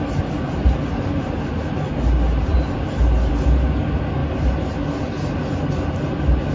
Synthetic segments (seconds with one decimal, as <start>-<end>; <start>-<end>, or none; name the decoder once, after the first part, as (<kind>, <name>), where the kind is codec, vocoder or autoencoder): none